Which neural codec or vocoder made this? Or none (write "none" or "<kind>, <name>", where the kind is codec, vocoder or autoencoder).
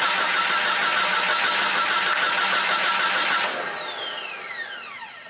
none